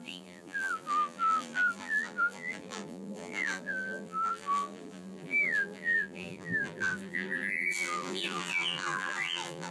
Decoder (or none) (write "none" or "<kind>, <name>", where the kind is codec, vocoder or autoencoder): vocoder, BigVGAN v2